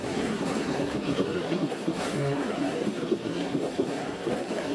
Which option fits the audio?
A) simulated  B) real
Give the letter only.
A